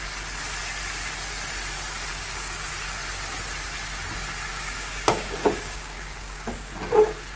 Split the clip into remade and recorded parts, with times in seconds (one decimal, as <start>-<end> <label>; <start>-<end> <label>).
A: 0.0-2.1 recorded; 2.1-2.7 remade; 2.7-4.5 recorded; 4.5-6.7 remade; 6.7-7.4 recorded